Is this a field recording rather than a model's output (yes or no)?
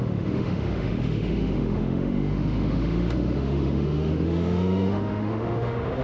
no